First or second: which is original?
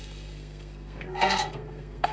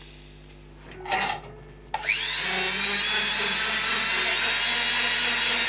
second